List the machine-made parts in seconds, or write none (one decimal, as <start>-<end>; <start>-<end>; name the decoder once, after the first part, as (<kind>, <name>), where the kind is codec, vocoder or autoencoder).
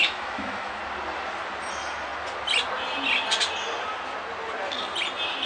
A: 0.0-0.8 (autoencoder, DAC-VAE)